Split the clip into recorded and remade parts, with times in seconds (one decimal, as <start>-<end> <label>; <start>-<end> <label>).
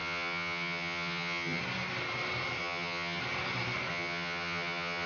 0.0-1.6 remade; 1.6-2.6 recorded; 2.6-3.2 remade; 3.2-3.9 recorded; 3.9-5.1 remade